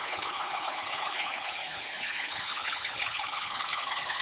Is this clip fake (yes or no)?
yes